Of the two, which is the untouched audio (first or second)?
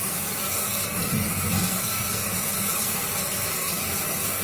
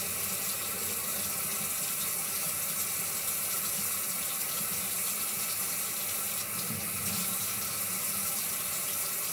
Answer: second